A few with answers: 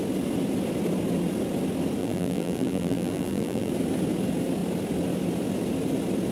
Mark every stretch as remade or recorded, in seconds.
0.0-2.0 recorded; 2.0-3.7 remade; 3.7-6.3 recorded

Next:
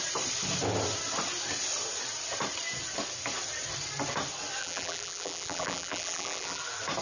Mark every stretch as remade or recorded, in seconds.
0.0-4.6 recorded; 4.6-6.6 remade; 6.6-7.0 recorded

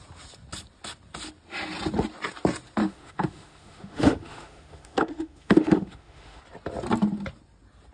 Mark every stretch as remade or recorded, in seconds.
0.0-2.8 recorded; 2.8-6.4 remade; 6.4-7.9 recorded

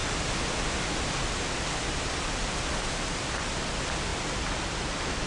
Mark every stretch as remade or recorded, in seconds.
0.0-5.3 recorded

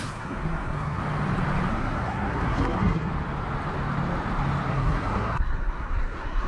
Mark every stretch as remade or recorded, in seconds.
0.0-1.0 remade; 1.0-1.7 recorded; 1.7-3.1 remade; 3.1-4.7 recorded; 4.7-6.5 remade

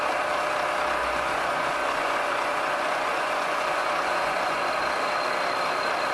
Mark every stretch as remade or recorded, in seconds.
0.0-1.0 recorded; 1.0-4.7 remade; 4.7-6.1 recorded